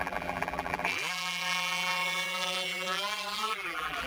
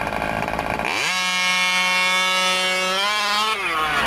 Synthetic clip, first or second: first